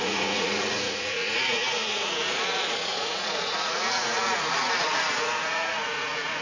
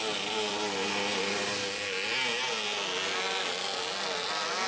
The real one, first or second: second